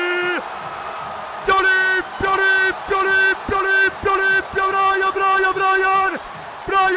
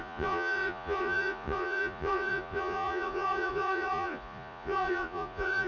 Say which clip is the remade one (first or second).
second